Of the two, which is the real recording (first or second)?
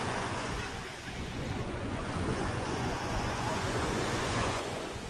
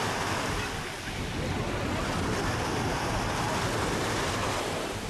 second